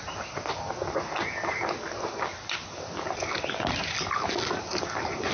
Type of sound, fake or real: real